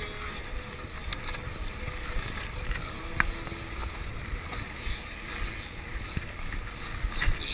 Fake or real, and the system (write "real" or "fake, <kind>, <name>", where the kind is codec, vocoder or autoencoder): real